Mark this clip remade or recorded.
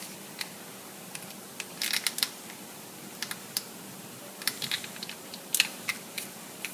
remade